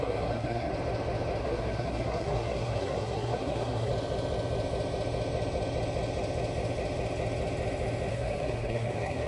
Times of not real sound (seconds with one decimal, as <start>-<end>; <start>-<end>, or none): 0.0-0.7; 1.4-3.9; 8.1-9.3